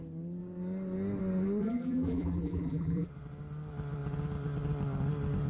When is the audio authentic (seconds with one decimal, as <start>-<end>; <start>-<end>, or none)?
0.0-1.6; 3.1-5.5